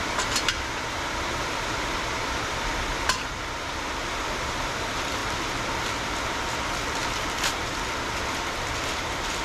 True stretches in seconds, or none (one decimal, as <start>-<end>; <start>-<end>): 5.2-8.2